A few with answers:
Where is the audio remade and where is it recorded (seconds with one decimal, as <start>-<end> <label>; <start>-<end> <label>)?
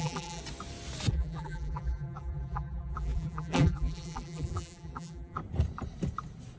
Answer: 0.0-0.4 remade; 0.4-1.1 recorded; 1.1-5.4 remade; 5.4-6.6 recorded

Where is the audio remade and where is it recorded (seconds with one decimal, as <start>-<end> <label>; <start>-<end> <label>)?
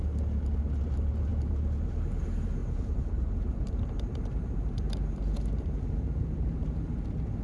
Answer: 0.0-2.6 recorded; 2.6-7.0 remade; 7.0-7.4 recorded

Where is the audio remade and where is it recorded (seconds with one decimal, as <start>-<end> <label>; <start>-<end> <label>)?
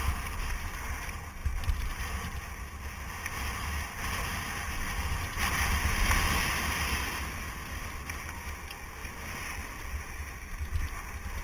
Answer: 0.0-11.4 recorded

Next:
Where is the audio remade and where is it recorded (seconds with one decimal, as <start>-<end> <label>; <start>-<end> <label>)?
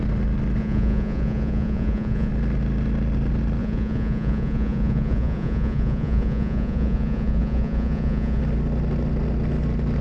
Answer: 0.0-0.6 recorded; 0.6-2.3 remade; 2.3-3.6 recorded; 3.6-8.4 remade; 8.4-10.0 recorded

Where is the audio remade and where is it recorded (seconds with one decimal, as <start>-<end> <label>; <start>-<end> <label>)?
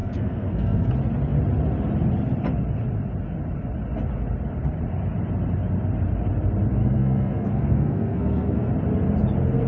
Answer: 0.0-0.9 remade; 0.9-6.8 recorded; 6.8-8.7 remade; 8.7-9.7 recorded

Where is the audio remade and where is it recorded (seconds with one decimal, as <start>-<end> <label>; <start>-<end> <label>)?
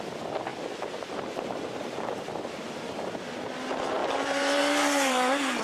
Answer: 0.0-0.5 recorded; 0.5-2.3 remade; 2.3-4.0 recorded; 4.0-5.6 remade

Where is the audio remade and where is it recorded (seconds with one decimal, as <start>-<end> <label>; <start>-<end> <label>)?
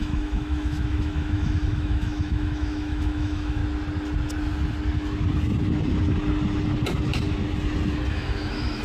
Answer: 0.0-3.6 remade; 3.6-8.1 recorded; 8.1-8.8 remade